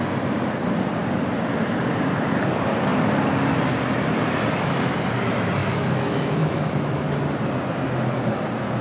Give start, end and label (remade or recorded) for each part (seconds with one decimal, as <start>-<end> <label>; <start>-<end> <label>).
0.0-5.6 recorded; 5.6-7.0 remade; 7.0-8.8 recorded